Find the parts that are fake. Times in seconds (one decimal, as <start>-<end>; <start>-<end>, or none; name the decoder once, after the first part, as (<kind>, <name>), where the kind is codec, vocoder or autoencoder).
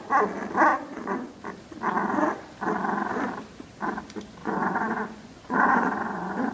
0.7-1.4 (vocoder, Vocos); 4.4-6.5